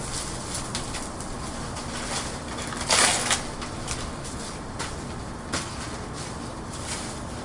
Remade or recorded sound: recorded